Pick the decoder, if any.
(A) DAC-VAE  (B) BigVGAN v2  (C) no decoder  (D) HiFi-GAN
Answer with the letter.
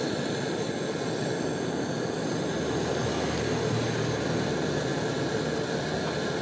C